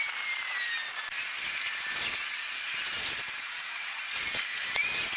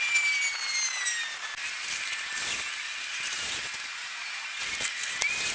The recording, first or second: second